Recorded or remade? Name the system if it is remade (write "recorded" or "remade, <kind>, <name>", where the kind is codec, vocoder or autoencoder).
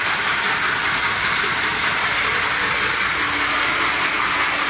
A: recorded